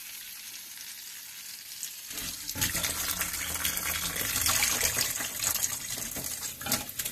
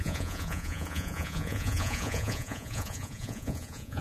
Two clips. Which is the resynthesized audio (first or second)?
second